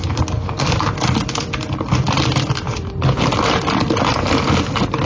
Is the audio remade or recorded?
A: recorded